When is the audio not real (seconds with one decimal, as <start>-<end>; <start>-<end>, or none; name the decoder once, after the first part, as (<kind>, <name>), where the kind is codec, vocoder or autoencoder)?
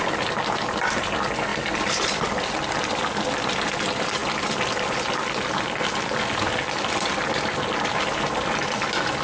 none